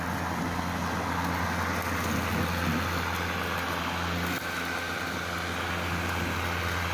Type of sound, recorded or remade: recorded